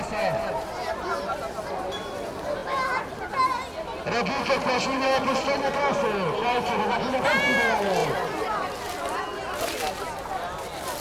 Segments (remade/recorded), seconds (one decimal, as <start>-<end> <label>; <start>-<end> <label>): 0.0-11.0 recorded